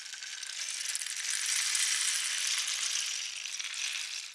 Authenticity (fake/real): real